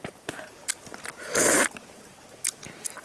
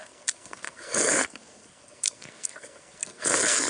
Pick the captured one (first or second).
first